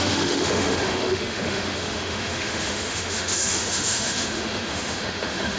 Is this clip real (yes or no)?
no